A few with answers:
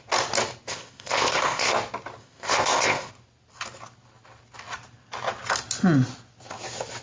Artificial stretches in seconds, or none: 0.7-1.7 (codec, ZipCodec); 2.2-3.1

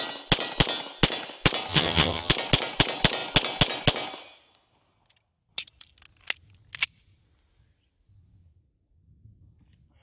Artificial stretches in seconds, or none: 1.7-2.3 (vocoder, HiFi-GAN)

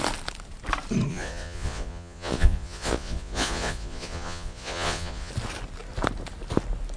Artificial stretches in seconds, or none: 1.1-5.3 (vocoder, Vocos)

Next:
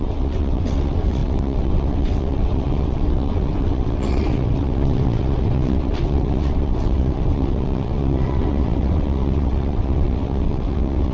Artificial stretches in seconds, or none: 0.0-11.1 (vocoder, WaveNeXt)

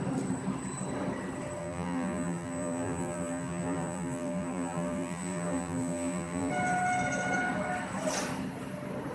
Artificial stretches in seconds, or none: 1.6-6.5 (vocoder, BigVGAN v2)

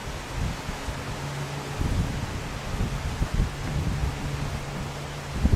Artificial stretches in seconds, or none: none

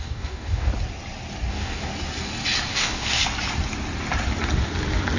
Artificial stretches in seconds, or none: 0.0-0.7 (codec, DAC); 1.5-1.9; 2.7-3.2